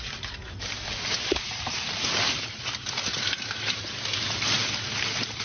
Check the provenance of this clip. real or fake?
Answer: real